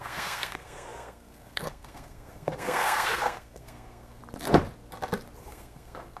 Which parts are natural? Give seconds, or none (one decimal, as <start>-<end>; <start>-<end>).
4.2-5.4